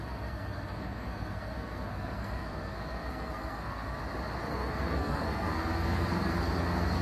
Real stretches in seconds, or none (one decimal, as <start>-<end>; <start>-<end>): 4.0-4.5